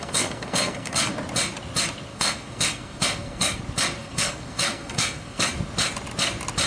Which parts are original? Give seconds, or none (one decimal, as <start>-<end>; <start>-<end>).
1.1-2.1; 3.6-4.0; 5.5-6.7